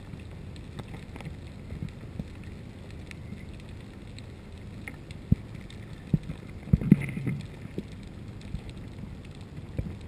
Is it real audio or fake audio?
real